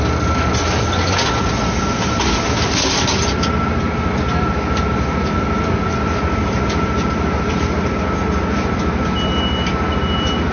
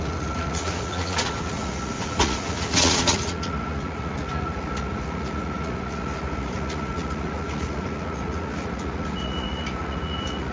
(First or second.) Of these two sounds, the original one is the first